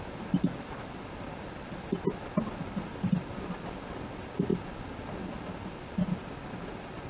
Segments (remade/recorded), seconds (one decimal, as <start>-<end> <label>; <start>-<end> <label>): 0.0-7.1 recorded